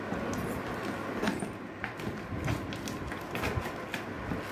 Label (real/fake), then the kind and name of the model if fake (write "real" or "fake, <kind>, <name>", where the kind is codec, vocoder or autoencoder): real